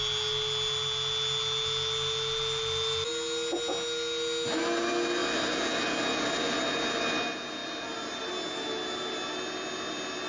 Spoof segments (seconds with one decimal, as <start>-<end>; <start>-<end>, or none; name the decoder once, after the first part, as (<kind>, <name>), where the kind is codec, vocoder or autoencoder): none